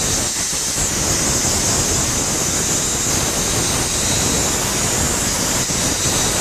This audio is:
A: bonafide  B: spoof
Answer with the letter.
A